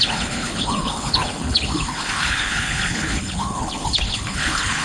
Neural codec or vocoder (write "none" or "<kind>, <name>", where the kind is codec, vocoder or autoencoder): codec, HILCodec